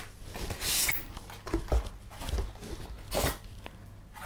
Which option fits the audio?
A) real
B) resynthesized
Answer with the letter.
A